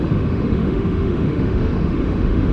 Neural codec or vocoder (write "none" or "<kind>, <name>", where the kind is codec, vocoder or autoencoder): autoencoder, DAC-VAE